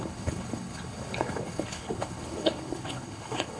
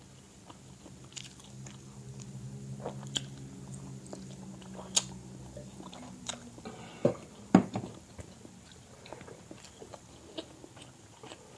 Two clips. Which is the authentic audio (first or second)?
second